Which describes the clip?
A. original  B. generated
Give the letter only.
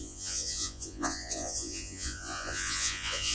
B